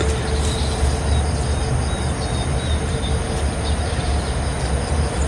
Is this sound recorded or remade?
recorded